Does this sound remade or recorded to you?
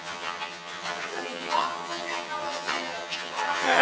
remade